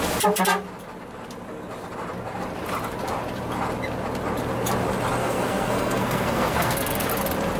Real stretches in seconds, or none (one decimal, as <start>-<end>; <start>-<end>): 0.0-5.2; 7.1-7.6

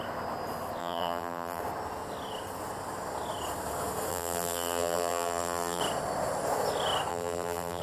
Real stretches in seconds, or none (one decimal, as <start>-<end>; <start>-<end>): 0.0-0.8; 1.6-4.1; 5.8-7.1

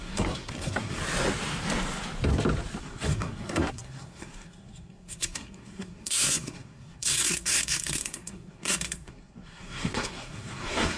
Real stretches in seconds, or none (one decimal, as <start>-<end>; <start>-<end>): 1.0-2.8

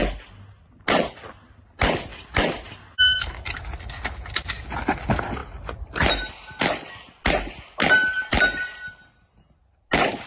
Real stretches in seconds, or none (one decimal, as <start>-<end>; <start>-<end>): 0.0-2.1; 3.6-5.4; 6.9-10.3

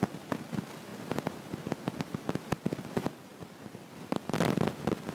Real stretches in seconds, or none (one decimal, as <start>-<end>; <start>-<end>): 0.0-5.1